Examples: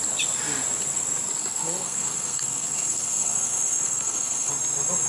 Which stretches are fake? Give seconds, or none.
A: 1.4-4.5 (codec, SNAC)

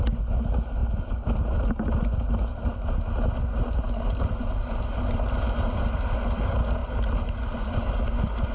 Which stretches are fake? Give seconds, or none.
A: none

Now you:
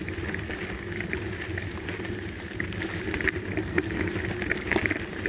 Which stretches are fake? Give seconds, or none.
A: 3.6-4.1 (codec, SNAC)

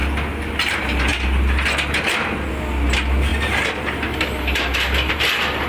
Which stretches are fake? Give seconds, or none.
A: none